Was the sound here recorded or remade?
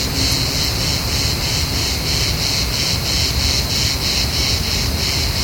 recorded